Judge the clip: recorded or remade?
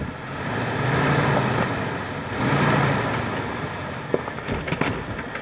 recorded